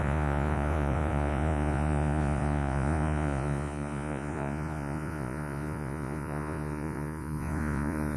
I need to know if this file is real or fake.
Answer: fake